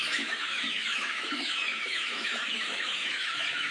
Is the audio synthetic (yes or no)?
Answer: yes